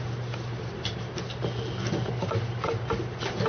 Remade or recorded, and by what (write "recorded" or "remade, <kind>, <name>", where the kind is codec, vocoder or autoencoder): recorded